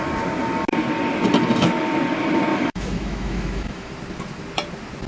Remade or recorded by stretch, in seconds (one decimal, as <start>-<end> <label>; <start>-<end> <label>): 0.0-2.5 recorded; 2.5-3.9 remade; 3.9-5.1 recorded